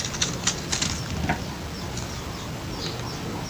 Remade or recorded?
recorded